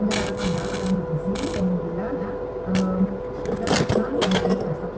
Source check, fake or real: real